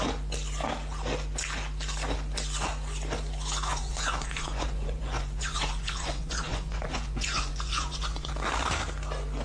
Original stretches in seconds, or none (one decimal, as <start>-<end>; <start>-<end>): 0.0-3.7; 8.3-9.4